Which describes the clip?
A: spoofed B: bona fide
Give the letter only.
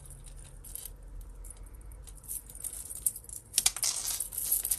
B